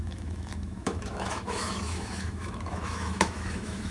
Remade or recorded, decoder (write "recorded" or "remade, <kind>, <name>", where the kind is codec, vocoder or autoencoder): remade, autoencoder, DAC-VAE